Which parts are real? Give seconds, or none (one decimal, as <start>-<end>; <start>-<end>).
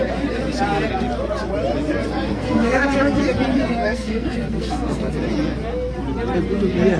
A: 0.0-2.3; 3.2-3.6; 5.1-7.0